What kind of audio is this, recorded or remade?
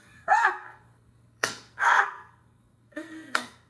remade